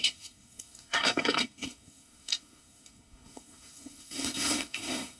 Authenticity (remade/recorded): remade